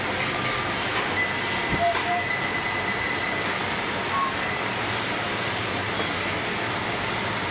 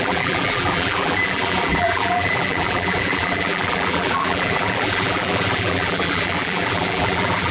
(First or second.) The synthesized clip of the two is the second